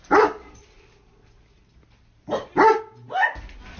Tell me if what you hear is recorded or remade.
recorded